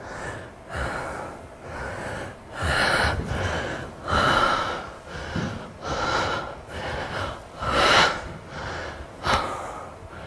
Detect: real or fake real